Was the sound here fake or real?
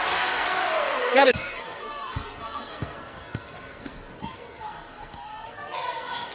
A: fake